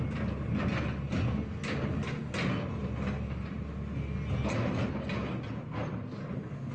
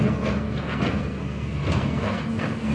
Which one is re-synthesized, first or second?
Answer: second